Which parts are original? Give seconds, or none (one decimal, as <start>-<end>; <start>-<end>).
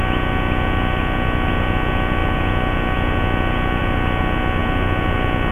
0.0-5.5